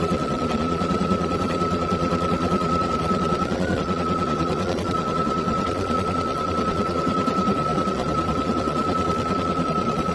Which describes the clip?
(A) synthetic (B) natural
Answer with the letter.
A